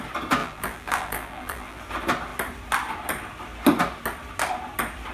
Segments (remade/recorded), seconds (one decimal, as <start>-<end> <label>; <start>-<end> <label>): 0.0-0.4 recorded; 0.4-1.8 remade; 1.8-5.1 recorded